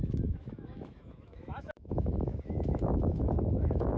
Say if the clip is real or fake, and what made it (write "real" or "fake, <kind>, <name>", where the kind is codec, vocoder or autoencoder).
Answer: fake, autoencoder, DAC-VAE